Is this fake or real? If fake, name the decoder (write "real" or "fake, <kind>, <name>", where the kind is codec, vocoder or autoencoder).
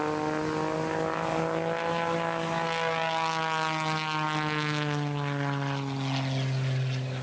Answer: real